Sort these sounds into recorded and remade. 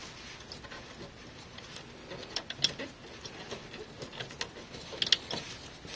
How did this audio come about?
recorded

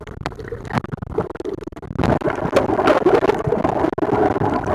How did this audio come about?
recorded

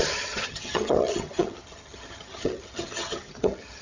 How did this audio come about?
remade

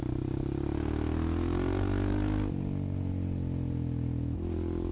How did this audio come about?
recorded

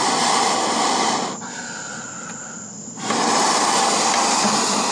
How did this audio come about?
recorded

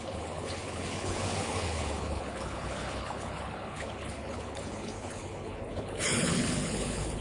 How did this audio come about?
remade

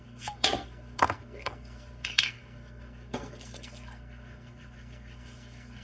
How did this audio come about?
remade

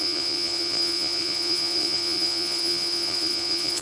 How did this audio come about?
remade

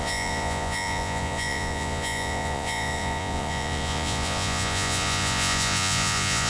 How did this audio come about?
remade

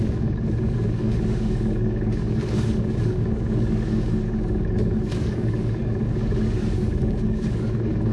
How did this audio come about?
remade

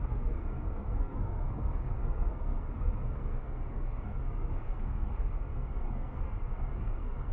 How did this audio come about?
remade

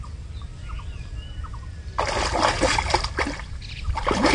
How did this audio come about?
recorded